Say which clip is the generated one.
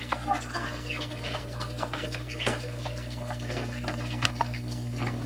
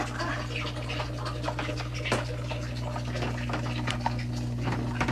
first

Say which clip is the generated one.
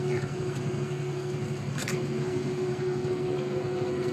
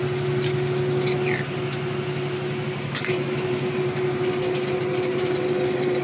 first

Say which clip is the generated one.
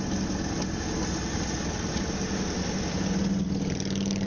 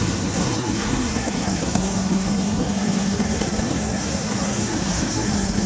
second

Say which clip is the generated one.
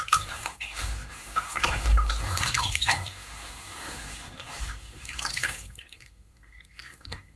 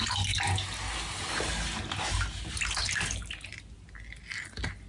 first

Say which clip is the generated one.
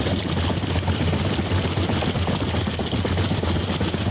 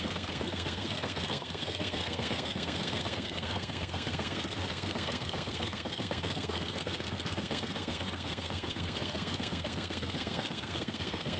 second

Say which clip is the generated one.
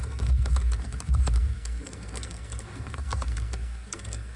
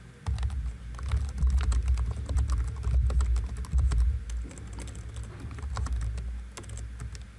first